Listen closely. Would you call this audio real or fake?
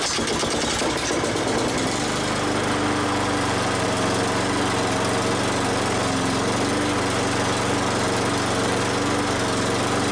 real